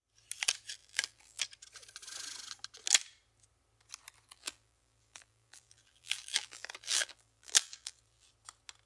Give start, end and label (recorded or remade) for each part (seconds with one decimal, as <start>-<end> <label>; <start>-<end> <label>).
0.0-0.8 recorded; 0.8-1.4 remade; 1.4-4.3 recorded; 4.3-8.3 remade; 8.3-8.9 recorded